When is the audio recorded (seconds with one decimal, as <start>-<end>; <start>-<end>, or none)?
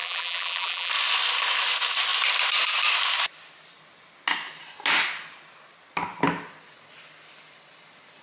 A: 0.9-8.2